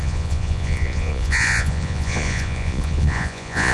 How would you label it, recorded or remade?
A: remade